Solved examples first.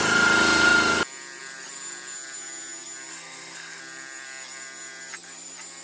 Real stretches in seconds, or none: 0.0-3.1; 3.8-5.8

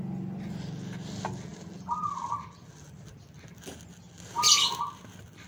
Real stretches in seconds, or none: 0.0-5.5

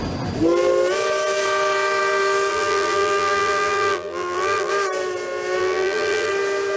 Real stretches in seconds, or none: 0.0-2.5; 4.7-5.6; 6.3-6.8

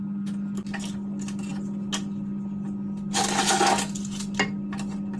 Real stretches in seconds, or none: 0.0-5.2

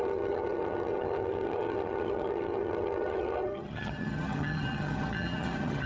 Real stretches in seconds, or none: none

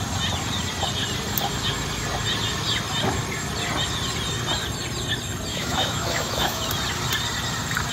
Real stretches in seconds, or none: 0.0-5.5; 6.6-7.9

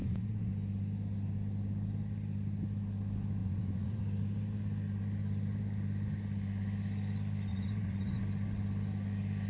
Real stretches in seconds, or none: 0.5-3.4; 4.0-7.5; 8.2-9.5

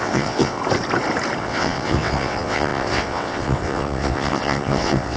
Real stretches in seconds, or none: 0.6-1.4